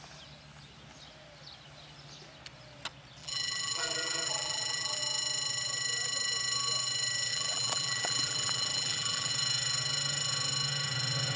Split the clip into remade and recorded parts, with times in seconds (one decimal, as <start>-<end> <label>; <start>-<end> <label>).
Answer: 0.0-3.2 recorded; 3.2-5.0 remade; 5.0-7.3 recorded; 7.3-9.3 remade; 9.3-11.4 recorded